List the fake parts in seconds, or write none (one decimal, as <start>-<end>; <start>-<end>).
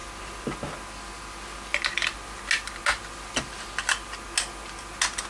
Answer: none